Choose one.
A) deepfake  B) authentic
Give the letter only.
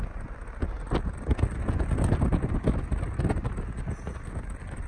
B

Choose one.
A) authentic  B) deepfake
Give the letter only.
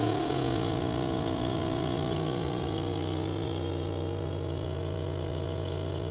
A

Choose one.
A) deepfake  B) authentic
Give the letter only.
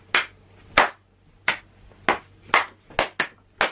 B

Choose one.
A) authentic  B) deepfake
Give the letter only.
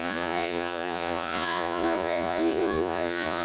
B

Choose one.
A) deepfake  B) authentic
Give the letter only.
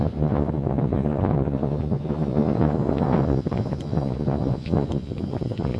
A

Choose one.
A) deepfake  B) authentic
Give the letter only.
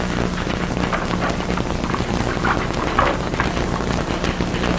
B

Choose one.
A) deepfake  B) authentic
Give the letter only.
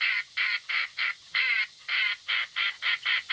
A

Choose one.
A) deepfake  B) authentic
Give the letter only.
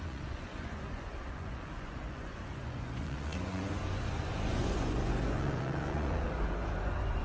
A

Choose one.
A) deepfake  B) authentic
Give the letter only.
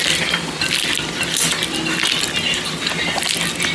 B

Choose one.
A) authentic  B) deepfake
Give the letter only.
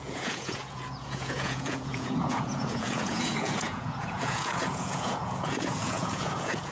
B